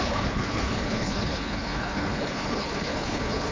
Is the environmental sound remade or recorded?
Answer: remade